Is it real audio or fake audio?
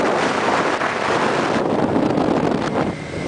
real